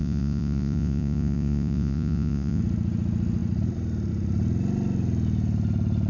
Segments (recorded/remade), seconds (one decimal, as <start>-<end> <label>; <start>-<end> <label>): 0.0-2.6 remade; 2.6-6.1 recorded